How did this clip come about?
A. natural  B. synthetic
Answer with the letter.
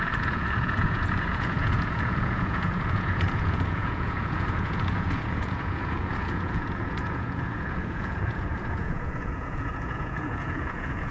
B